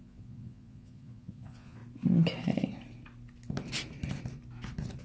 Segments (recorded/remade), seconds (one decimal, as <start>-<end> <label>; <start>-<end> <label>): 0.0-1.8 remade; 1.8-5.0 recorded